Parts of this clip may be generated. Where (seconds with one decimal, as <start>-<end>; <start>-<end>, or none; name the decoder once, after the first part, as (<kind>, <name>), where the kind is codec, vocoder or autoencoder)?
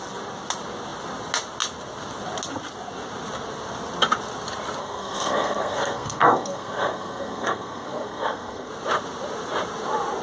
4.8-8.7 (codec, SNAC)